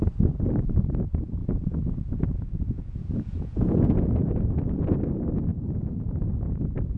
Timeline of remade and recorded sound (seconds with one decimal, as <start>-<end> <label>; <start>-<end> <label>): 0.0-1.4 recorded; 1.4-5.0 remade; 5.0-5.5 recorded; 5.5-6.6 remade; 6.6-7.0 recorded